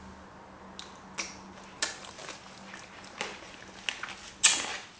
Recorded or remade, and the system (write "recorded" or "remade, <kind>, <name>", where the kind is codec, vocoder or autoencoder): recorded